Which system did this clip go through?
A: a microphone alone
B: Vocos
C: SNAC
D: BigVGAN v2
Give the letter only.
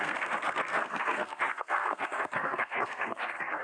C